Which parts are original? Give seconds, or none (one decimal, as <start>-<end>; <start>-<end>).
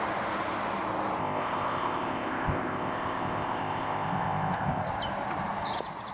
0.0-1.2; 4.9-6.1